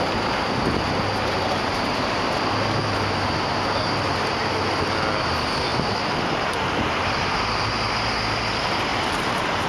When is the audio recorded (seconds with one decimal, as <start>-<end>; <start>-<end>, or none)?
0.0-1.4; 2.4-5.7; 7.3-8.9